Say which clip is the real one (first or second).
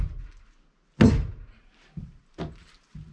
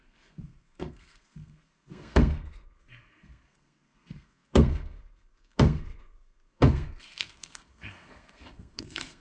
first